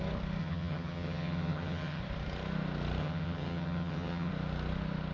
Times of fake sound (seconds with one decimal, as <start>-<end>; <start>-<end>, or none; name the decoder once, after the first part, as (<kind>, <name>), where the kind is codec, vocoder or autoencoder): 0.4-2.0 (vocoder, HiFi-GAN); 3.0-4.3